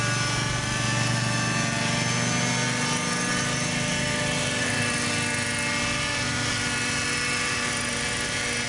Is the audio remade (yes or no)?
no